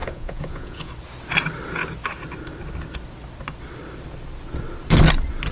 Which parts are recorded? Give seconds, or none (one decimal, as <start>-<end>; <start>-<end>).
0.9-5.5